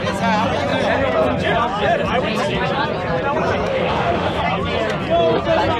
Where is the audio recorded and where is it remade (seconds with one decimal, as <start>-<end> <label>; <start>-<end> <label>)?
0.0-3.7 recorded; 3.7-4.4 remade; 4.4-5.8 recorded